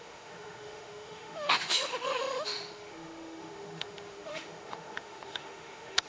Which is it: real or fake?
fake